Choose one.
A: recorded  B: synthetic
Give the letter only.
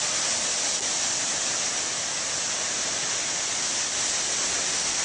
A